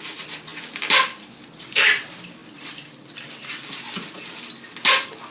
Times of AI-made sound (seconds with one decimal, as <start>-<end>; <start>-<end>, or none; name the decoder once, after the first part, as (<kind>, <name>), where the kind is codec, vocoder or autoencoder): none